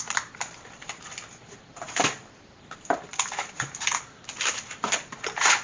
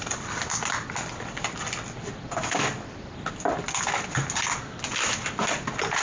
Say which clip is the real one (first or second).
second